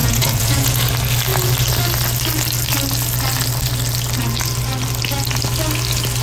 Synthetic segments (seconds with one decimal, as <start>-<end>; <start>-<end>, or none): 0.0-0.9